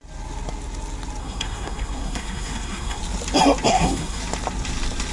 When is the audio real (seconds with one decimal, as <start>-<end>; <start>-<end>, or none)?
0.0-1.2; 3.0-3.7; 4.2-5.1